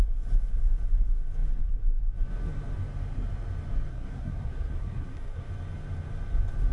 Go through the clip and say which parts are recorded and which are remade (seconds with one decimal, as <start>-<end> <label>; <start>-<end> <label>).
0.0-3.9 recorded; 3.9-5.5 remade; 5.5-6.7 recorded